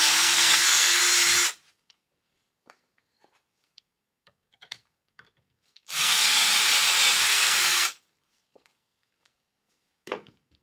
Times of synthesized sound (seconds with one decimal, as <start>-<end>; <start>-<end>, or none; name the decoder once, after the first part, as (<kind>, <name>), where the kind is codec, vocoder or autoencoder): 0.0-1.0 (codec, SNAC); 1.7-6.5; 7.2-10.6